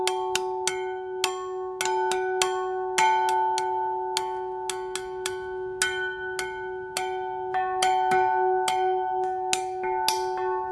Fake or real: real